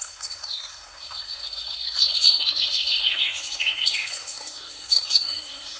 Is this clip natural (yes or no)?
no